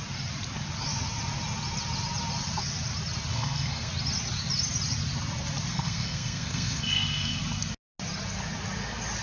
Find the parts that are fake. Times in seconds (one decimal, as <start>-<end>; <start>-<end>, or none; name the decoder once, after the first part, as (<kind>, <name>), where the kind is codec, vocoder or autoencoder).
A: 3.3-3.9 (codec, SNAC); 5.7-7.4